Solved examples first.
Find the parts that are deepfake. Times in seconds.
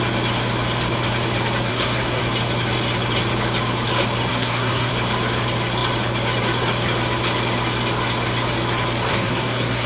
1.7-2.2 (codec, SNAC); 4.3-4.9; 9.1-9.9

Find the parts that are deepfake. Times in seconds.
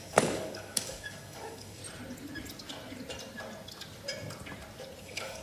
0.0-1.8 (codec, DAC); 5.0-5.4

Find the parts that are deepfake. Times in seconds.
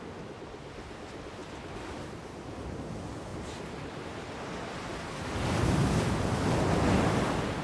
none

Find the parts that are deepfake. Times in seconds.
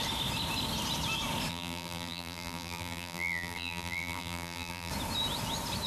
1.5-4.9 (vocoder, BigVGAN v2)